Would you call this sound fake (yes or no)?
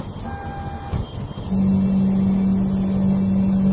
no